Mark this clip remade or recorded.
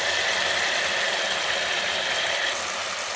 recorded